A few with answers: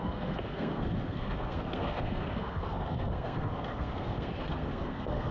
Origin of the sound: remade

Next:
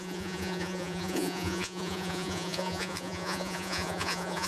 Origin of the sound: remade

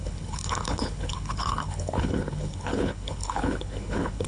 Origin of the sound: remade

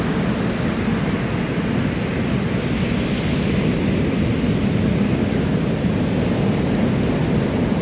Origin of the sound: recorded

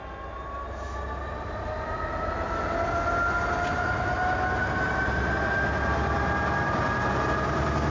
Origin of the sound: recorded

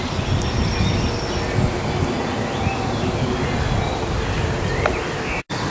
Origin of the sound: recorded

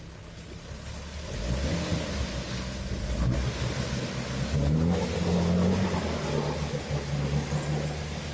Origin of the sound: recorded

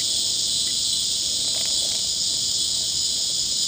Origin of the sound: recorded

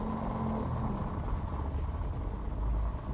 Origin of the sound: recorded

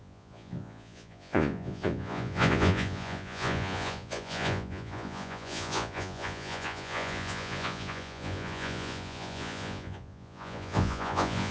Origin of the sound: remade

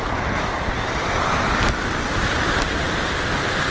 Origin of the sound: recorded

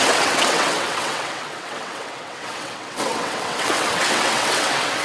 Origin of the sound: remade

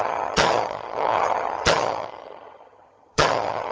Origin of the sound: remade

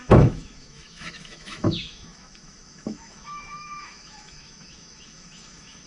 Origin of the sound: remade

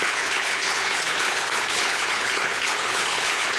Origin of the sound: remade